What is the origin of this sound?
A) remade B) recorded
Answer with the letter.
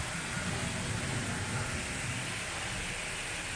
B